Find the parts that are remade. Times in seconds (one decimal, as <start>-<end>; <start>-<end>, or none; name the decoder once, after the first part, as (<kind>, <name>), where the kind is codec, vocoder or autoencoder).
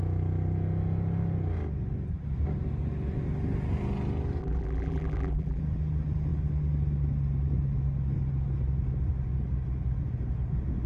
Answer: 4.4-5.6 (vocoder, BigVGAN v2)